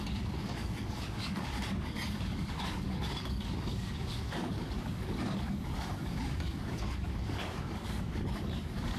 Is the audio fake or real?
fake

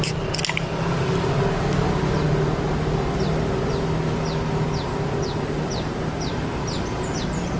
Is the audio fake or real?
real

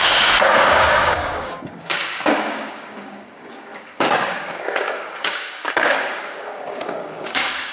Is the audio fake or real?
fake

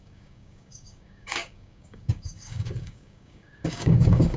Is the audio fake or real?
fake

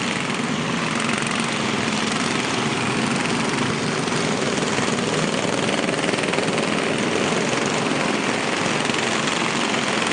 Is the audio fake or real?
real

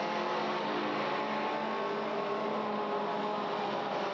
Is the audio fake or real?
real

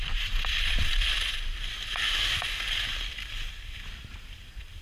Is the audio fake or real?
real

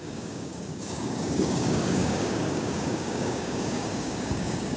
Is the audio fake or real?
fake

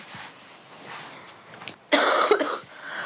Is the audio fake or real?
real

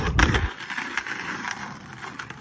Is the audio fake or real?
real